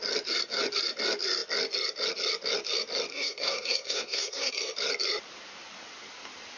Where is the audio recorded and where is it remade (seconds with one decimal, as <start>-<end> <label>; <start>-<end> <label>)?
0.0-3.1 recorded; 3.1-4.5 remade; 4.5-6.6 recorded